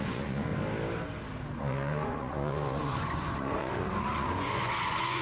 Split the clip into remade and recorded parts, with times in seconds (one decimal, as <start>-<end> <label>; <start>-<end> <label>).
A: 0.0-0.5 remade; 0.5-1.6 recorded; 1.6-5.2 remade

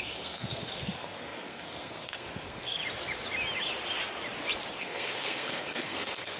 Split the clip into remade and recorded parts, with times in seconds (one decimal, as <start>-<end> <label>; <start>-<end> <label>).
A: 0.0-2.8 remade; 2.8-4.8 recorded; 4.8-6.4 remade

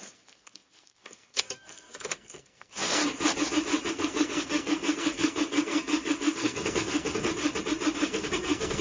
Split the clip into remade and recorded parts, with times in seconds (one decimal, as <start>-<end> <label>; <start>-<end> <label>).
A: 0.0-3.0 remade; 3.0-3.9 recorded; 3.9-7.3 remade; 7.3-8.0 recorded; 8.0-8.8 remade